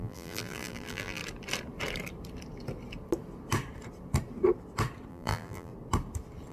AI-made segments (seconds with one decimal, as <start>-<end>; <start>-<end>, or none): 0.0-1.2; 5.1-5.7